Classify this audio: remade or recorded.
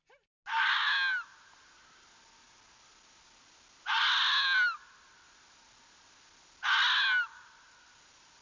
recorded